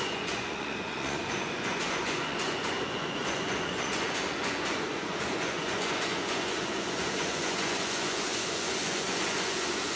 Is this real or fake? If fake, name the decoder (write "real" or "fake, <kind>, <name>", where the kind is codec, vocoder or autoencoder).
fake, vocoder, Vocos